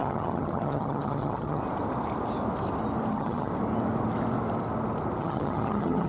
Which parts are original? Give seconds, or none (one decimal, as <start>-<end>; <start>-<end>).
1.6-3.1; 3.5-5.2